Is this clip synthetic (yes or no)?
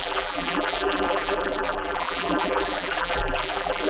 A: yes